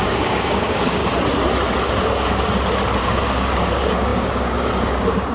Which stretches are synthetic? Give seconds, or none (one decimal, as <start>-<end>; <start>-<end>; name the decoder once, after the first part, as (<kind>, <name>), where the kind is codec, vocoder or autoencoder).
0.0-1.0 (codec, DAC); 3.0-5.3